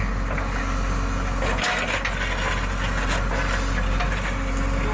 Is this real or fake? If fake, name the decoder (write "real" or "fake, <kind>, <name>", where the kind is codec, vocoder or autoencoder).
real